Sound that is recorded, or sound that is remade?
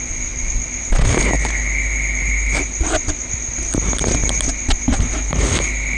recorded